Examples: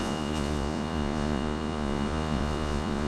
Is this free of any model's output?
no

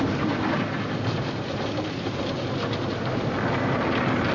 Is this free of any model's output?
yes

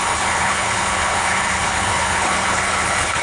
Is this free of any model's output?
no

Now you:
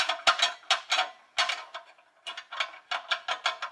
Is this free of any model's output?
yes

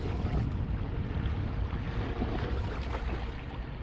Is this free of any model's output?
yes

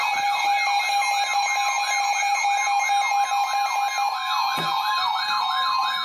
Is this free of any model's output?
yes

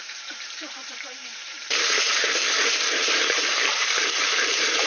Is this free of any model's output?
no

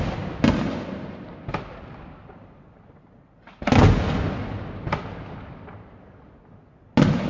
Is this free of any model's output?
yes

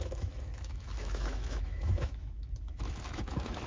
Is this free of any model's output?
no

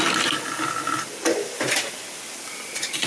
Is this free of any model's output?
yes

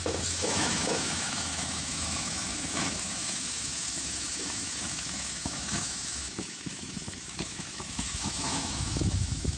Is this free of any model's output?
no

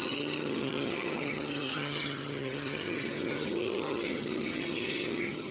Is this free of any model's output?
no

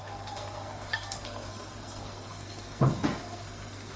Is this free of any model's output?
no